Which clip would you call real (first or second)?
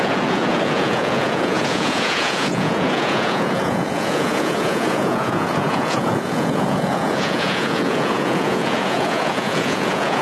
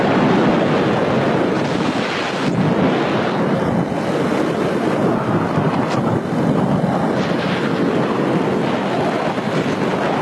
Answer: second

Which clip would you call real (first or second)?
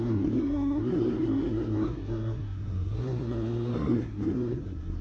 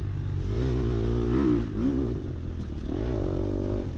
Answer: second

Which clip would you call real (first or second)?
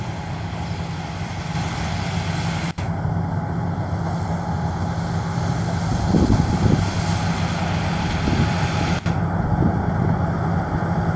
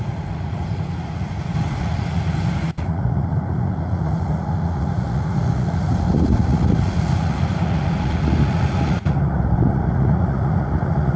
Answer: first